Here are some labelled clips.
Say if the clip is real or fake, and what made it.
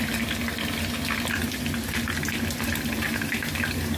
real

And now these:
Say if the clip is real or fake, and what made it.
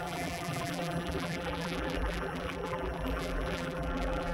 fake, vocoder, BigVGAN v2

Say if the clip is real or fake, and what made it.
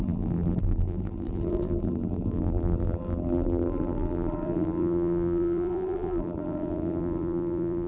fake, vocoder, BigVGAN v2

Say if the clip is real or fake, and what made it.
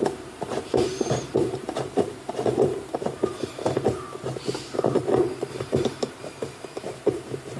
fake, vocoder, BigVGAN v2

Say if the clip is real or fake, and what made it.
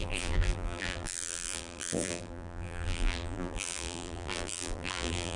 fake, vocoder, BigVGAN v2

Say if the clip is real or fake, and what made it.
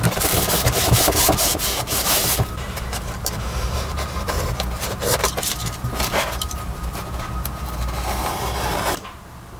fake, vocoder, BigVGAN v2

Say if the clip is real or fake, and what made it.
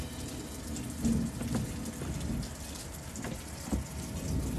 real